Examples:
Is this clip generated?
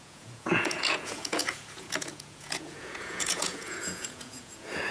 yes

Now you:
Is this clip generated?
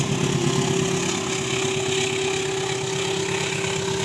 no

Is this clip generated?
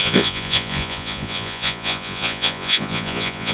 yes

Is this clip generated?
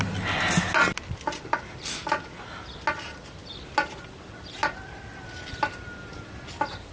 no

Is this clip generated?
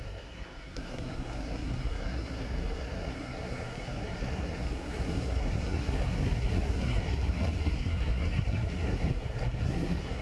yes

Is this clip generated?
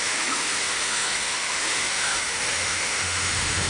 yes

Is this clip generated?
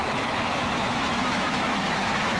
yes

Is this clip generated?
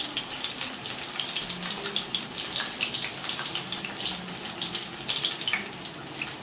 no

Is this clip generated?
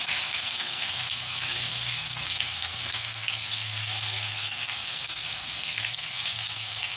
yes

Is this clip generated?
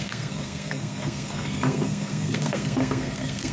yes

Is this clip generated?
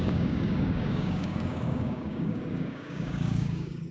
yes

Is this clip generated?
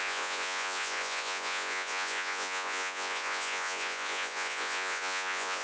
yes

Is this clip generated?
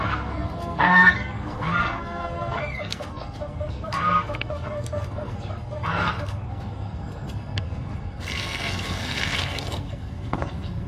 yes